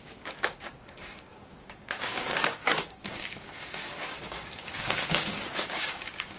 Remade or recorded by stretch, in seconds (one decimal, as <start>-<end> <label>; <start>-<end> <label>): 0.0-6.4 remade